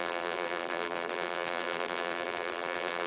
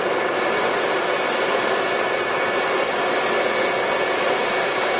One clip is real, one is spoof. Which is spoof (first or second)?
first